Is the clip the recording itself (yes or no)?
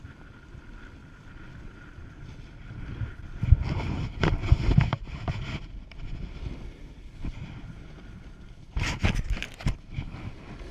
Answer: no